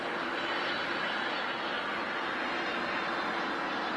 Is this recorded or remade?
recorded